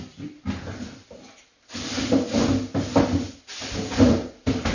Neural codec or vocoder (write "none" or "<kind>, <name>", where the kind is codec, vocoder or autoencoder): none